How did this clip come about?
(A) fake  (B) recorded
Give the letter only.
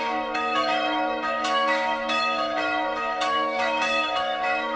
A